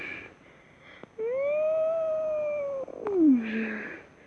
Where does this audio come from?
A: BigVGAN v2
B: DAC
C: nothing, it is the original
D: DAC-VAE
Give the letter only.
C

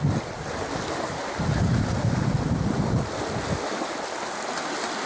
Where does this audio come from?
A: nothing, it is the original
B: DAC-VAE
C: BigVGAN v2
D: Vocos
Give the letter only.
A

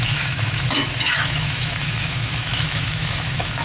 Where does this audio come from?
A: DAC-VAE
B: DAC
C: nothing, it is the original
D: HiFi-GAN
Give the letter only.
A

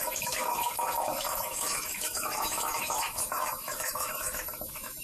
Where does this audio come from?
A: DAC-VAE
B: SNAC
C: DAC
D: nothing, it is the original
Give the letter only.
A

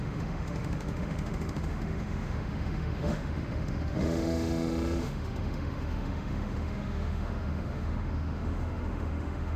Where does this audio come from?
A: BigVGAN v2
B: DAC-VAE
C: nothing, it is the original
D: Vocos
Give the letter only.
B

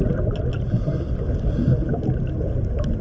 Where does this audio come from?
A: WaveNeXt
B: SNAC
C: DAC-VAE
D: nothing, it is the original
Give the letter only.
D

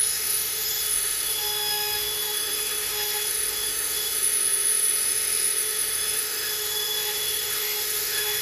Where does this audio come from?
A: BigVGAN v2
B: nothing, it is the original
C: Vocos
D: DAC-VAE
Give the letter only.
D